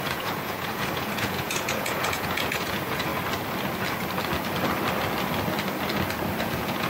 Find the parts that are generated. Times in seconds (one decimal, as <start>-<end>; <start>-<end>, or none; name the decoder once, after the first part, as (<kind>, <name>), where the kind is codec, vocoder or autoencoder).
0.0-3.1 (vocoder, Vocos); 6.4-6.9